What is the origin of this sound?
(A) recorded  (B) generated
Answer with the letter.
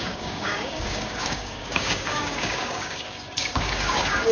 B